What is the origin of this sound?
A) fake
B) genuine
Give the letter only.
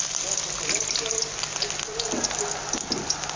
B